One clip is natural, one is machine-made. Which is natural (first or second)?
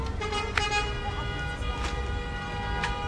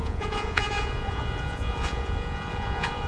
first